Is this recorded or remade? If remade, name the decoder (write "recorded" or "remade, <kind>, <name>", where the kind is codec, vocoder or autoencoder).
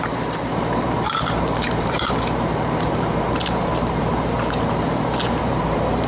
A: remade, vocoder, BigVGAN v2